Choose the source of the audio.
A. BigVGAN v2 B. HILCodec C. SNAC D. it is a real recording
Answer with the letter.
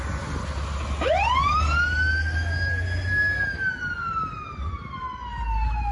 D